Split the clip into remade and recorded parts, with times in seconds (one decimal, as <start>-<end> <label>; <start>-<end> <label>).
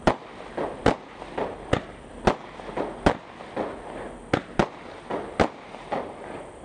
0.0-6.6 recorded